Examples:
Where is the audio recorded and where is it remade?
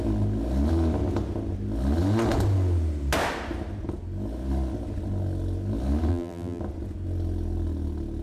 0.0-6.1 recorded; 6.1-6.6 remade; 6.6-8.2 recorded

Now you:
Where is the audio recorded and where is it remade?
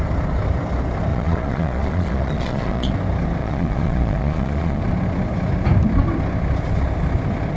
0.0-1.1 recorded; 1.1-2.9 remade; 2.9-3.4 recorded; 3.4-4.8 remade; 4.8-7.6 recorded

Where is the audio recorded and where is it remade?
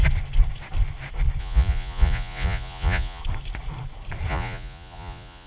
0.0-1.4 recorded; 1.4-3.2 remade; 3.2-4.3 recorded; 4.3-5.5 remade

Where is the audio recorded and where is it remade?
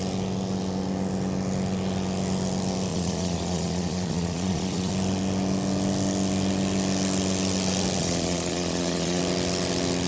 0.0-2.9 recorded; 2.9-4.9 remade; 4.9-8.0 recorded; 8.0-9.2 remade; 9.2-10.1 recorded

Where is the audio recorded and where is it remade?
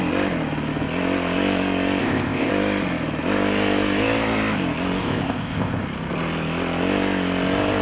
0.0-2.0 recorded; 2.0-2.5 remade; 2.5-5.0 recorded; 5.0-5.8 remade; 5.8-7.8 recorded